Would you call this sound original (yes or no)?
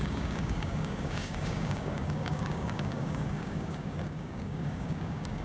no